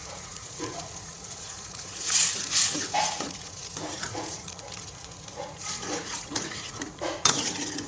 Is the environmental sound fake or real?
fake